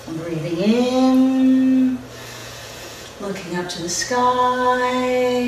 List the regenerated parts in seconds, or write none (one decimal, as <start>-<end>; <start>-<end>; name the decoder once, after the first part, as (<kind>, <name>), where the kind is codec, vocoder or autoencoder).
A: 2.4-3.7 (vocoder, Vocos)